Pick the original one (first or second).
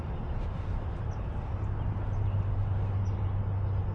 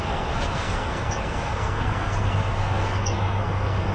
first